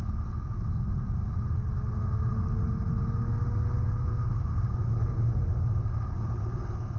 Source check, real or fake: real